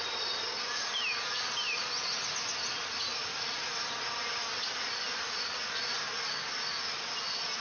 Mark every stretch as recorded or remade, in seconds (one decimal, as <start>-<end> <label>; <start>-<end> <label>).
0.0-3.1 recorded; 3.1-3.9 remade; 3.9-7.6 recorded